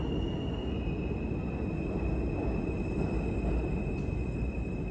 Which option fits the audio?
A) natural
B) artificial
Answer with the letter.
A